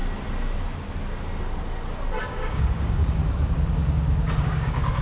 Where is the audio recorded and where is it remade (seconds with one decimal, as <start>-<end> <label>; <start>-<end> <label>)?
0.0-2.2 recorded; 2.2-3.2 remade; 3.2-4.4 recorded; 4.4-5.0 remade